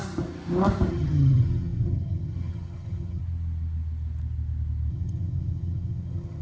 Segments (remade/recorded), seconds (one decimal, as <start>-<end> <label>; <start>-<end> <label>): 0.0-0.9 recorded; 0.9-3.2 remade; 3.2-4.9 recorded; 4.9-6.4 remade